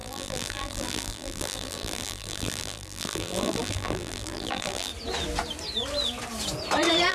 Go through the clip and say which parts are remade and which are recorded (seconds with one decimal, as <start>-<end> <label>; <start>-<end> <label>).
0.0-4.9 remade; 4.9-7.1 recorded